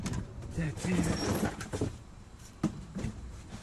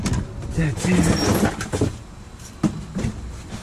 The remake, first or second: first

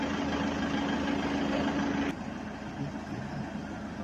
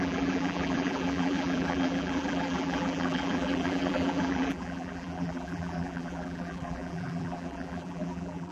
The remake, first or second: second